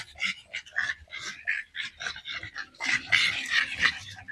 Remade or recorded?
recorded